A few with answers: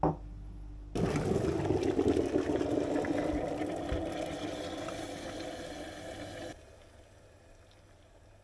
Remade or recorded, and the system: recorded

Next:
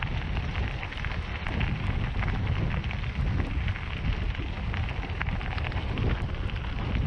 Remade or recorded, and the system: recorded